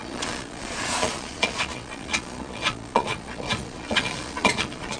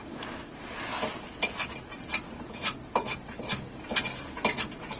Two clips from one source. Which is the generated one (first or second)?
first